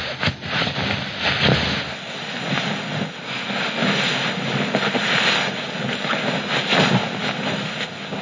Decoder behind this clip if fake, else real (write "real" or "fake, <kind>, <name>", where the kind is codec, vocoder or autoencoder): real